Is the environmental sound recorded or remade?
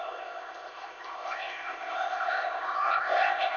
remade